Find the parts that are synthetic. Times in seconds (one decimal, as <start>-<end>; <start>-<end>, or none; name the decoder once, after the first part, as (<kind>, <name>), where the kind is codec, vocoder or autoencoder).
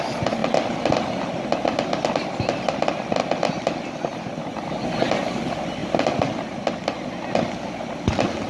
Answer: 4.5-5.1 (vocoder, BigVGAN v2)